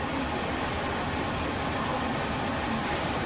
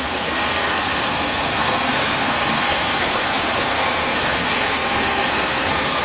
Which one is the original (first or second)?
first